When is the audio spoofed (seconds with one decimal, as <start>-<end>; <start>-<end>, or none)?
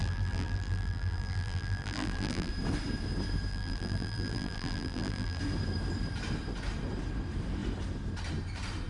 0.0-2.5; 3.5-5.4